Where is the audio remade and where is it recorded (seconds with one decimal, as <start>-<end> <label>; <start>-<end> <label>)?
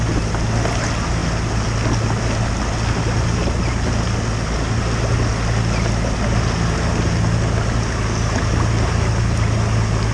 0.0-10.1 recorded